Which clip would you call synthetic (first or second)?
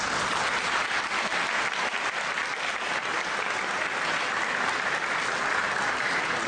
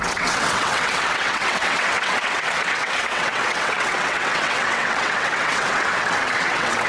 second